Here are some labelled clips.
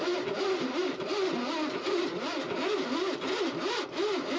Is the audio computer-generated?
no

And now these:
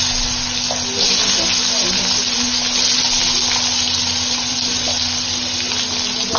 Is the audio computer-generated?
no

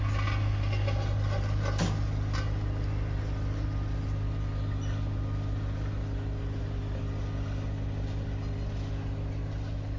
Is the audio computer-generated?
no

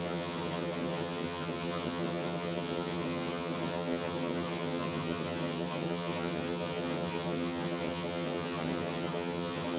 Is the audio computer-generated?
yes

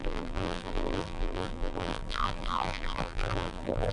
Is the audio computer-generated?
yes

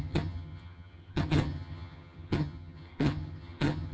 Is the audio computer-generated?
yes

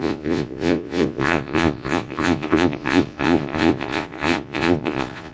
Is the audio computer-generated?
yes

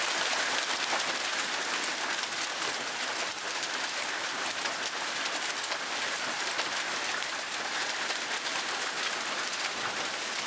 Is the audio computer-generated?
no